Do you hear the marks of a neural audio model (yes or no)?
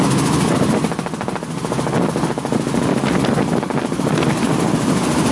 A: no